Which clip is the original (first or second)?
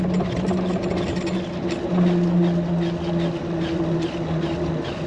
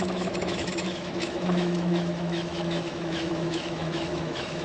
first